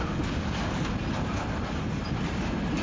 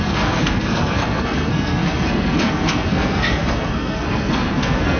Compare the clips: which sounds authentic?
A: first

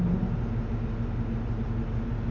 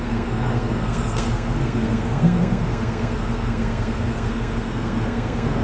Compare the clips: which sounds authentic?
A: first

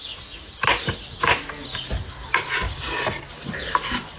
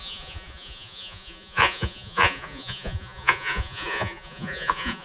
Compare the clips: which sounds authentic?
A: first